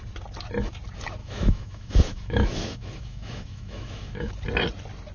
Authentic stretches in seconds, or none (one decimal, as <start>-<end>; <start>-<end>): 0.0-1.2; 4.3-5.1